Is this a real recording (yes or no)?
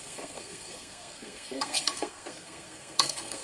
no